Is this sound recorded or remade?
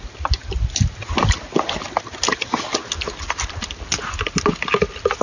recorded